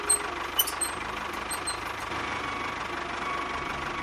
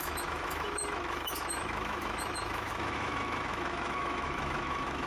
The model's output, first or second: second